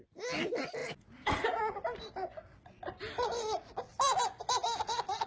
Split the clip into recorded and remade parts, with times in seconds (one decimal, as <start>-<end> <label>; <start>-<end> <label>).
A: 0.0-0.8 recorded; 0.8-1.6 remade; 1.6-5.3 recorded